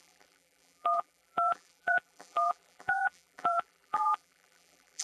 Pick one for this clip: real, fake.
fake